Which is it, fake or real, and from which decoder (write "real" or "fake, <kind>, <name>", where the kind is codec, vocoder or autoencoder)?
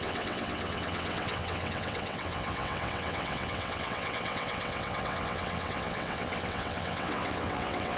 fake, vocoder, WaveNeXt